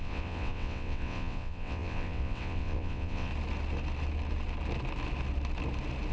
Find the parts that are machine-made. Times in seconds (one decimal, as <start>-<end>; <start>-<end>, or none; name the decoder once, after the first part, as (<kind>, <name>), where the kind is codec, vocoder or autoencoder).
0.0-3.3 (vocoder, WaveNeXt)

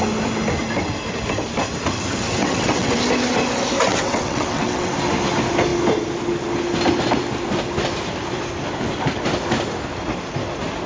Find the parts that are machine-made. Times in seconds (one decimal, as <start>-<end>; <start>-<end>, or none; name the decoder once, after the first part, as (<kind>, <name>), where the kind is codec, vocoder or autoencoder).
2.4-3.0 (vocoder, WaveNeXt); 3.9-4.9

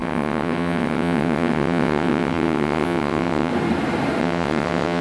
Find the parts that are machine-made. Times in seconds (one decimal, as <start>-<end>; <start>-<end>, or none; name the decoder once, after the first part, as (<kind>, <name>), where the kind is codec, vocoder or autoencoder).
0.0-3.5 (vocoder, WaveNeXt); 4.2-5.0

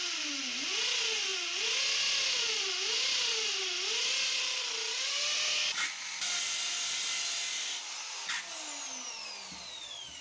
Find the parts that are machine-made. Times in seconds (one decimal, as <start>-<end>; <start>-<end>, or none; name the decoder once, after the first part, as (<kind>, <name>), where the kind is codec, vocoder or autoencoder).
none

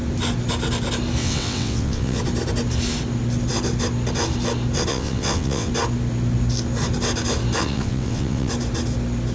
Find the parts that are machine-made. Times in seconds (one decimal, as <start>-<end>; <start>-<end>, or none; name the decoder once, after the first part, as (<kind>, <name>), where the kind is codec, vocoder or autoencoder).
1.2-2.2 (vocoder, WaveNeXt); 4.9-5.7; 7.6-8.5

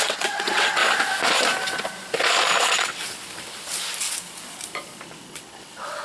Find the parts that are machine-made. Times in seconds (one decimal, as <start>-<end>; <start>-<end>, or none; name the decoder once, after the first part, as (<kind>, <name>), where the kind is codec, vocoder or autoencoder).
0.0-0.8 (vocoder, WaveNeXt); 2.6-3.0; 5.2-6.0